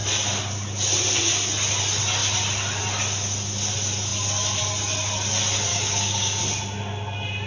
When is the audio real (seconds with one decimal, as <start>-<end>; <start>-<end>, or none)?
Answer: 0.0-5.7; 6.4-7.5

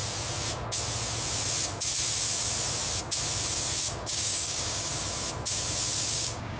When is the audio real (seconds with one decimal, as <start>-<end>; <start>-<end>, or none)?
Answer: 0.0-4.0; 4.9-6.1

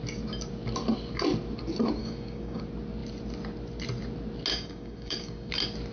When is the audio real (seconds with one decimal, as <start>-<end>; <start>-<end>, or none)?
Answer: 0.0-2.0; 2.6-4.5; 5.5-5.9

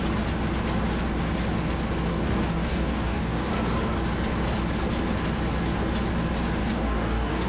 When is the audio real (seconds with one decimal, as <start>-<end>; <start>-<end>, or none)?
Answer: 0.0-2.1; 3.5-6.6

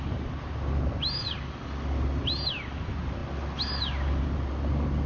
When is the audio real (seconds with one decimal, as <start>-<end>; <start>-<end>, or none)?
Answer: 0.0-5.1